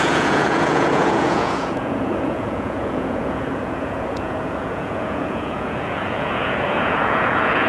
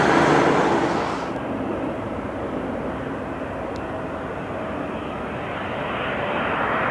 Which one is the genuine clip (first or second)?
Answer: second